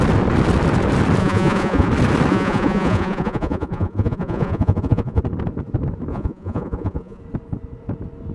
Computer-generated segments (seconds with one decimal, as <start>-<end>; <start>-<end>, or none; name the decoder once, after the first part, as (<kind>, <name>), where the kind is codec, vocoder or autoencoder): 1.2-1.9 (vocoder, Vocos); 2.3-5.2; 6.1-7.2